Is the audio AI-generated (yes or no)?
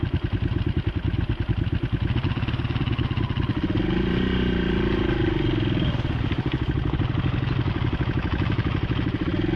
no